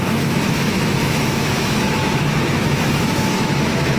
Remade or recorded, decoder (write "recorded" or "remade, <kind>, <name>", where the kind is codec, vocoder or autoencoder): remade, autoencoder, DAC-VAE